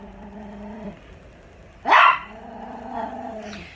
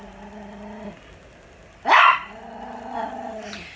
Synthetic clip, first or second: first